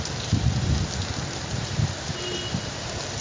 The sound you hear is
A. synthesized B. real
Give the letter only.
B